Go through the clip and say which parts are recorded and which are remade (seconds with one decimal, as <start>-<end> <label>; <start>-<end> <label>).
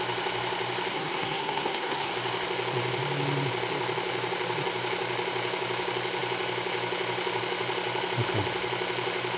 0.0-0.9 recorded; 0.9-2.1 remade; 2.1-9.4 recorded